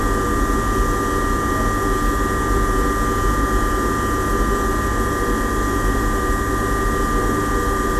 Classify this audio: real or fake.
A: real